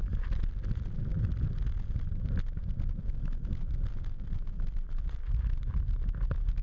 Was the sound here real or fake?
real